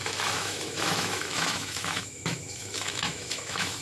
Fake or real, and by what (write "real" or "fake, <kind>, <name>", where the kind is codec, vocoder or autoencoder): fake, autoencoder, DAC-VAE